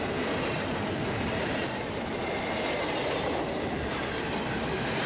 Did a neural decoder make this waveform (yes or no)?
yes